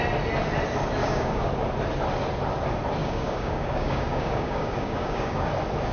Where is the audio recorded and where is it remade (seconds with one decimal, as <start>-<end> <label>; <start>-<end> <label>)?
0.0-1.0 recorded; 1.0-1.5 remade; 1.5-3.0 recorded; 3.0-5.5 remade; 5.5-5.9 recorded